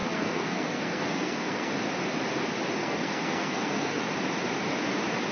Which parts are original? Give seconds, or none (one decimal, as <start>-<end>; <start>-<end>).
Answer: 1.7-2.8; 4.0-5.3

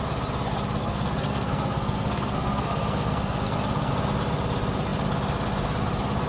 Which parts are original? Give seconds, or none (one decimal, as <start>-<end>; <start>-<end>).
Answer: 0.0-0.8; 3.9-6.3

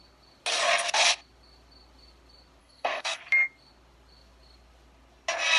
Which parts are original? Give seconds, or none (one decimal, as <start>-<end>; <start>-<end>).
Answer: 0.0-2.6; 3.2-5.6

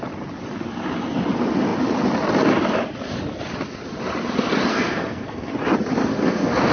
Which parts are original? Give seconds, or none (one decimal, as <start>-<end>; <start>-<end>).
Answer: 0.0-4.7; 5.5-6.1

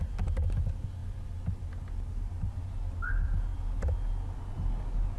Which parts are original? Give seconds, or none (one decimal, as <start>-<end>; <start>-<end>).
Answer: 0.0-5.2

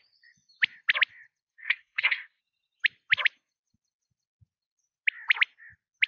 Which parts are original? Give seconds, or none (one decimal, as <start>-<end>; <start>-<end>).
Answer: 0.0-1.5; 2.4-6.1

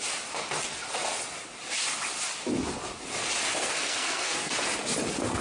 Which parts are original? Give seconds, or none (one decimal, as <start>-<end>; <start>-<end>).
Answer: 0.0-3.6; 4.5-5.4